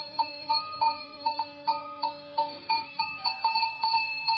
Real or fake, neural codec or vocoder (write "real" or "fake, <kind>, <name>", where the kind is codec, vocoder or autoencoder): fake, codec, SNAC